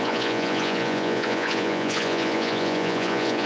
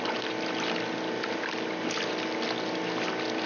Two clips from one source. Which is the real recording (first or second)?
second